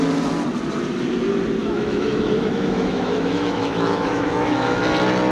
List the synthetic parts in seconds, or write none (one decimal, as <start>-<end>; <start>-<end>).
1.6-4.8